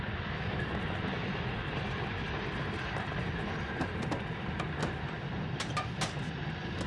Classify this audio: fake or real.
real